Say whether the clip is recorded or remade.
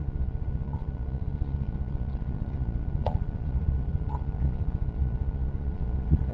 remade